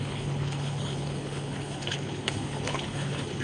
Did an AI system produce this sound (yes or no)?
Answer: yes